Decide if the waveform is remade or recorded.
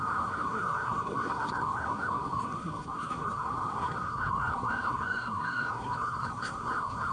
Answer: remade